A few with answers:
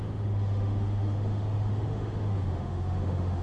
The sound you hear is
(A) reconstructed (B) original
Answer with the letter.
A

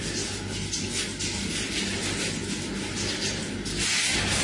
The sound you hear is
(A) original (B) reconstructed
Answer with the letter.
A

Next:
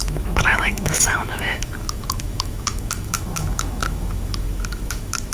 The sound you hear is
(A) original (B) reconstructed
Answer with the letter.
B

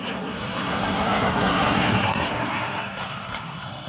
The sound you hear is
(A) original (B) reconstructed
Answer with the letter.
B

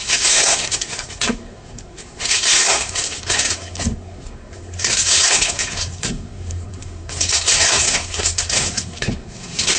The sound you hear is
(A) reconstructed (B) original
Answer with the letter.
A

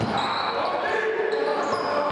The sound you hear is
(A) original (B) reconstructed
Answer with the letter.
A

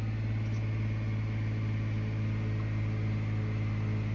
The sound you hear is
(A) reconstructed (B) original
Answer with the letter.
B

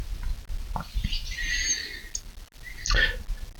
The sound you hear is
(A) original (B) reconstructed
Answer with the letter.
A